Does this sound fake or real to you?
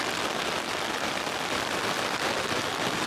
real